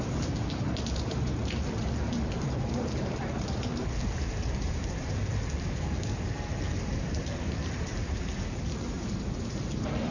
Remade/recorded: remade